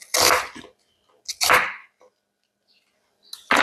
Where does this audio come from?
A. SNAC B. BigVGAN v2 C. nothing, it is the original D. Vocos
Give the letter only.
C